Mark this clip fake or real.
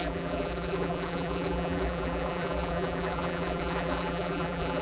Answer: fake